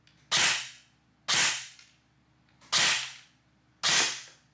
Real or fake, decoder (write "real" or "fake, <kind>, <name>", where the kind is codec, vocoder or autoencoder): real